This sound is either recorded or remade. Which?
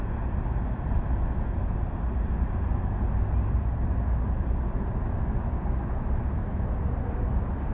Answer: recorded